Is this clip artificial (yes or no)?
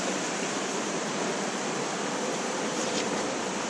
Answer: no